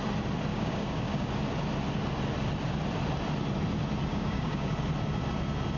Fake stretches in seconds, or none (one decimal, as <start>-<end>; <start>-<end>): 0.5-1.3; 4.1-4.7